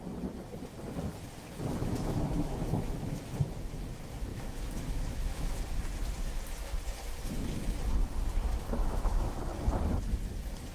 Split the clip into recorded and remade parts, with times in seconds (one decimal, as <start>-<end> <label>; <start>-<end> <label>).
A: 0.0-1.8 recorded; 1.8-3.2 remade; 3.2-4.3 recorded; 4.3-5.6 remade; 5.6-8.5 recorded; 8.5-9.4 remade; 9.4-10.7 recorded